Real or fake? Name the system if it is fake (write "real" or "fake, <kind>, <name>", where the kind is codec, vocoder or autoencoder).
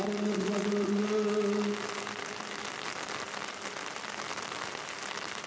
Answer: real